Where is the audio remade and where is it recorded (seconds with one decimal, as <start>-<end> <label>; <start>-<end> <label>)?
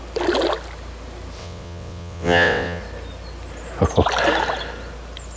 0.0-1.4 recorded; 1.4-2.8 remade; 2.8-5.4 recorded